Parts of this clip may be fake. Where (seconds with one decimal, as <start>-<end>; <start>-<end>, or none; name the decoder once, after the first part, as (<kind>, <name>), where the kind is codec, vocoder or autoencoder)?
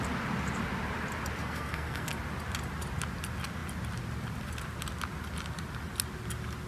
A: 1.4-2.1 (codec, SNAC)